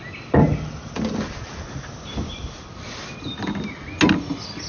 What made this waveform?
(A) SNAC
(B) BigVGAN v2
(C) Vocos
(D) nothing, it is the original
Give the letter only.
D